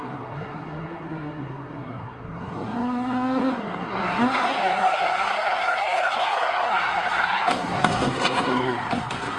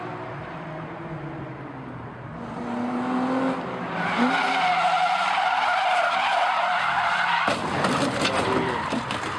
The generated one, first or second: first